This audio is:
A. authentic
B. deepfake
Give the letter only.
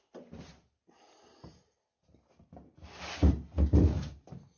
A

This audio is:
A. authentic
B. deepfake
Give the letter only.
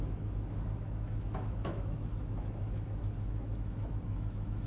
B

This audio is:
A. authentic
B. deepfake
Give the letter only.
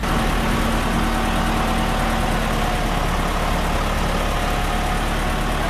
A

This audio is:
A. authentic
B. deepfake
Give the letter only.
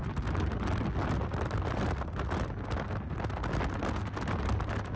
A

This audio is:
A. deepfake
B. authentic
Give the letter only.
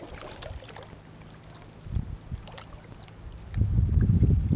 B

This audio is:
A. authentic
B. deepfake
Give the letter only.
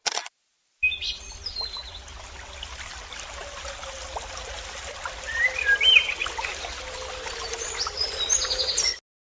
A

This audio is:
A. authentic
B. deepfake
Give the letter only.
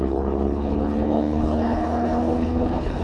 B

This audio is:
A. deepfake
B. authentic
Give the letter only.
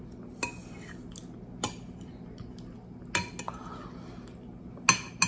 B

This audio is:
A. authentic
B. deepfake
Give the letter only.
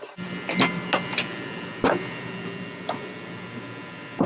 A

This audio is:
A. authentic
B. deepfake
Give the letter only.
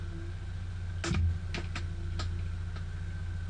A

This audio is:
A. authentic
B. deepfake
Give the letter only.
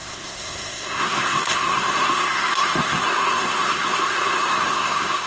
B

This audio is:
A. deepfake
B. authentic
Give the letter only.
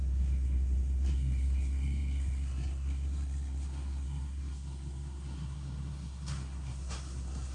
A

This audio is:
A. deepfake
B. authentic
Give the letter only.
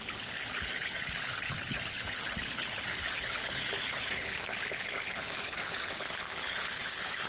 A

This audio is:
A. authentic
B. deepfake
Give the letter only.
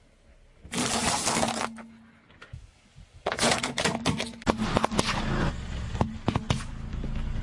A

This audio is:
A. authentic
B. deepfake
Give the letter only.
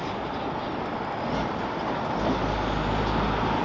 A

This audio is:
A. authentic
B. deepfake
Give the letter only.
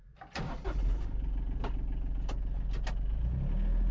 A